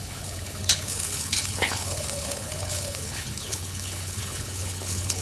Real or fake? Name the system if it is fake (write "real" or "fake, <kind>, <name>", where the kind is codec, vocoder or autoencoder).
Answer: fake, codec, HILCodec